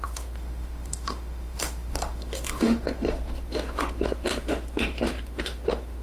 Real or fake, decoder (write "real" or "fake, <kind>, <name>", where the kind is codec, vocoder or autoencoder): fake, autoencoder, DAC-VAE